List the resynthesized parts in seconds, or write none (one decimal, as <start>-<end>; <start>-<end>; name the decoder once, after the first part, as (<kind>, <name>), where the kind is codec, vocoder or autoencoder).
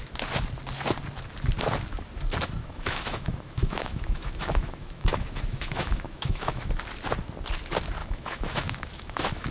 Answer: 2.6-6.7 (autoencoder, DAC-VAE); 8.0-9.5